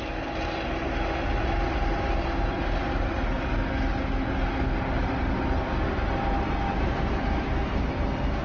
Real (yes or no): yes